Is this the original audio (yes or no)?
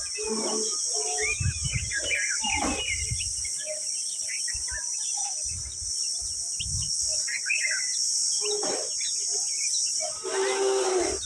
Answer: yes